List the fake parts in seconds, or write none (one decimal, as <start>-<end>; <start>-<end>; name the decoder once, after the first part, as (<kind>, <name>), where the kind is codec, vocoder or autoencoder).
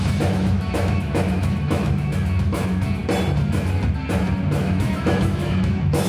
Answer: 0.0-3.0 (autoencoder, DAC-VAE); 4.6-6.1